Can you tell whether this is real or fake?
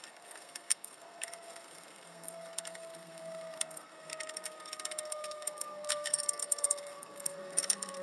fake